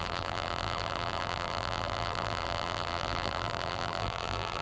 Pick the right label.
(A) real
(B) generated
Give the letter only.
B